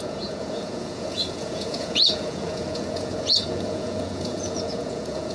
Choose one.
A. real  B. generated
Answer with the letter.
B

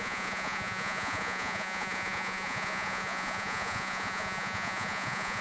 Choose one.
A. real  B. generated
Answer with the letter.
B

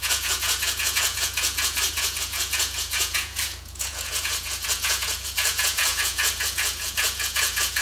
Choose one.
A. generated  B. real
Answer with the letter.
A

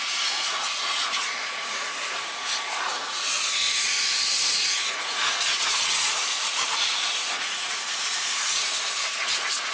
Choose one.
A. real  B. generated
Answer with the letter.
B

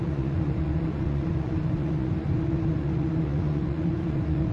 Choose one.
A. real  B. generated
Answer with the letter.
B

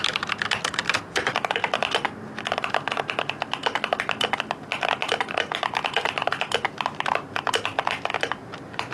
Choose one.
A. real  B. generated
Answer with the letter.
A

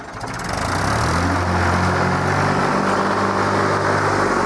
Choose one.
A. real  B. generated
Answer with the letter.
A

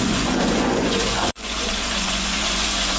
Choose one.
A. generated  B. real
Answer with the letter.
A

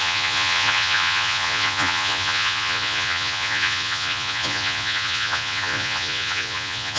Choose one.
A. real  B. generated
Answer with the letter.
B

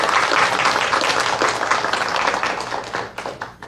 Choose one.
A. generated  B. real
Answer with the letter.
B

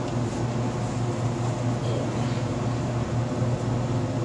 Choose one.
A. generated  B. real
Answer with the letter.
B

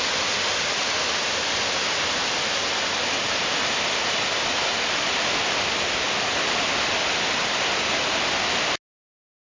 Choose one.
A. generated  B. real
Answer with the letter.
B